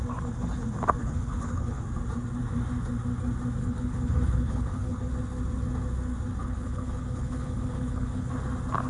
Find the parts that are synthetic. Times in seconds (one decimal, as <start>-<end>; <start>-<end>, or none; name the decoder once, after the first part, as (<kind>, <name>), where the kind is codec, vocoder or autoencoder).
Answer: 1.0-1.8 (codec, HILCodec); 3.6-5.1; 6.4-8.3